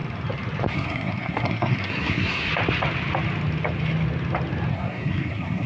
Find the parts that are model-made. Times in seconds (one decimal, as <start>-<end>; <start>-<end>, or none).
0.7-2.5; 4.7-5.7